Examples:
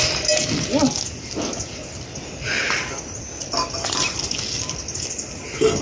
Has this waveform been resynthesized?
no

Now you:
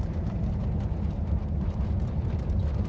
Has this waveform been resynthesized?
yes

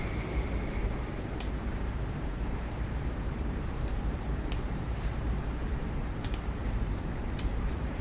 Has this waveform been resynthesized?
yes